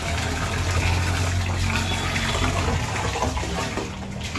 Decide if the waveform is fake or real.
real